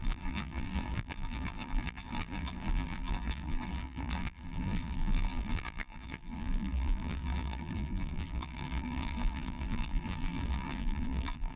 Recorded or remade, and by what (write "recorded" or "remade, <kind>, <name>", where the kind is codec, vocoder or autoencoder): remade, vocoder, BigVGAN v2